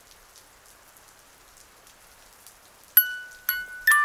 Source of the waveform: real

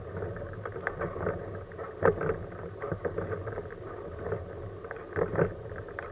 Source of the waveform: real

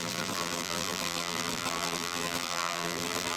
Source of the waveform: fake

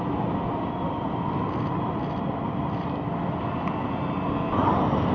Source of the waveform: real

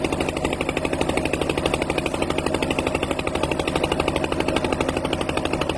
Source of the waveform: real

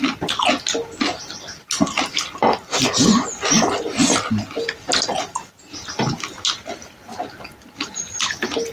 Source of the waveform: real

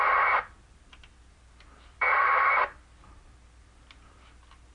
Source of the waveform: fake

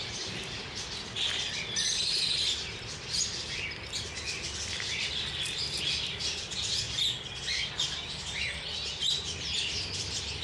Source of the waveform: real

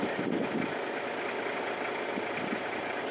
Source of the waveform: real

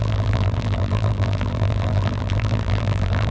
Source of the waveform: fake